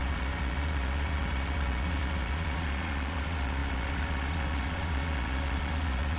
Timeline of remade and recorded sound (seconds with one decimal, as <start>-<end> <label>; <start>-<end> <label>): 0.0-6.2 remade